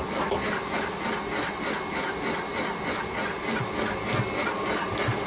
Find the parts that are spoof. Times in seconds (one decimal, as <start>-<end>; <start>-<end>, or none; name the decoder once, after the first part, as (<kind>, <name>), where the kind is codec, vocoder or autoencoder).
none